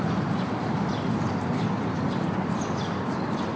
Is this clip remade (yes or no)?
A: no